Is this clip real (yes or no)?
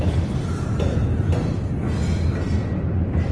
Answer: yes